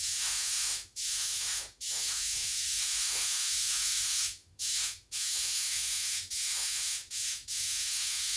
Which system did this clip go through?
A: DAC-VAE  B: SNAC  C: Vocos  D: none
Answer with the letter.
A